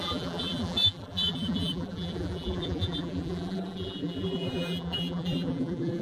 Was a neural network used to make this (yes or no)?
yes